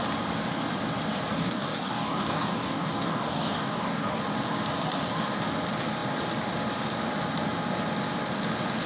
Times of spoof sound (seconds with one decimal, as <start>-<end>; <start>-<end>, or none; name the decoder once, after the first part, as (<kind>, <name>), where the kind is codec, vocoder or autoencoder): 1.3-4.2 (codec, DAC)